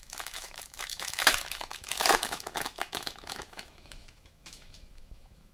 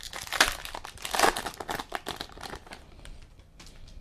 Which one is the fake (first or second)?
first